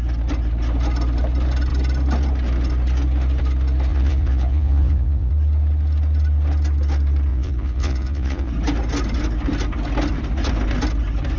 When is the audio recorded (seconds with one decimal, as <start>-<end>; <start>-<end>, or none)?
0.0-3.9; 5.3-7.3; 8.5-11.4